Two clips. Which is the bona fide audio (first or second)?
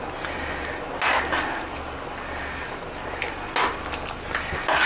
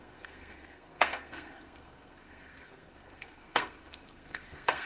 first